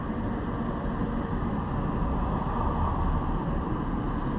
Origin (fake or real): real